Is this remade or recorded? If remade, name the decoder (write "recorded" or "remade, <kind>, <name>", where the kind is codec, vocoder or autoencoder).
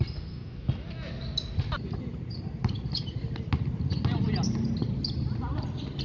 recorded